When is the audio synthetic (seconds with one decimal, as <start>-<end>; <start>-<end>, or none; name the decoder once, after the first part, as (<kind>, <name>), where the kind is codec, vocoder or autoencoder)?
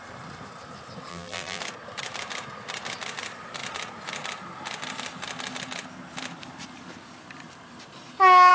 1.1-1.6 (vocoder, BigVGAN v2)